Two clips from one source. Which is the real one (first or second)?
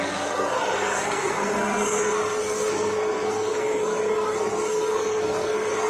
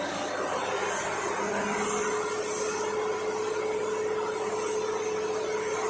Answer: second